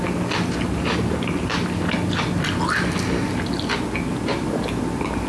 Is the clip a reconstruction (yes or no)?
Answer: no